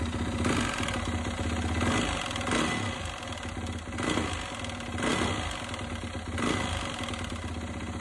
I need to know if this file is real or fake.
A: real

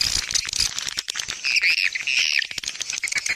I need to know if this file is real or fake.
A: real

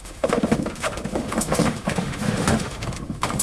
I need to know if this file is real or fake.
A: fake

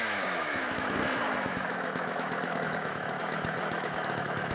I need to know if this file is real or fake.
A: fake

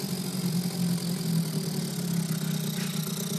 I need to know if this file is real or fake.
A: real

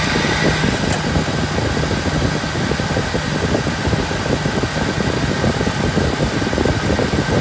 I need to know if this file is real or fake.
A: real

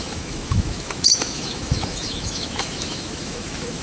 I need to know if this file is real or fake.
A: fake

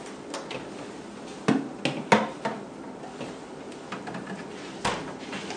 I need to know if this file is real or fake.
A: real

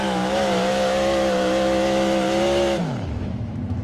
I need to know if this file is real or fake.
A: fake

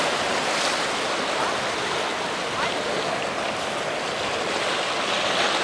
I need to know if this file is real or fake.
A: real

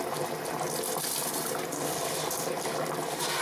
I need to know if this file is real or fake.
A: real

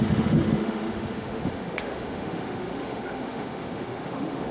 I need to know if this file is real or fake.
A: fake